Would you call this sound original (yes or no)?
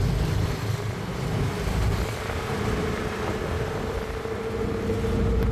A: yes